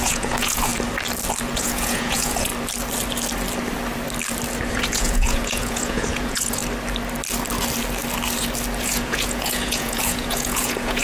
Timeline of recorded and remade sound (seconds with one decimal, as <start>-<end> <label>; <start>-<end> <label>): 0.0-0.7 remade; 0.7-1.6 recorded; 1.6-2.5 remade; 2.5-4.7 recorded; 4.7-6.6 remade; 6.6-8.8 recorded; 8.8-11.0 remade